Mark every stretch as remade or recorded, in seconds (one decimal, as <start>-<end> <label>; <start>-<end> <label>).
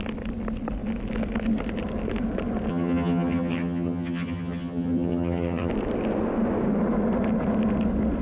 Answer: 0.0-2.7 recorded; 2.7-5.7 remade; 5.7-8.2 recorded